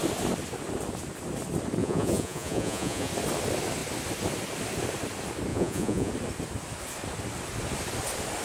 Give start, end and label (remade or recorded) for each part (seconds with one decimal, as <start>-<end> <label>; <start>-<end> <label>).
0.0-1.8 recorded; 1.8-3.1 remade; 3.1-5.5 recorded; 5.5-6.1 remade; 6.1-8.4 recorded